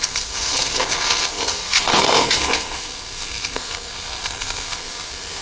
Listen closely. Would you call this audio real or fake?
fake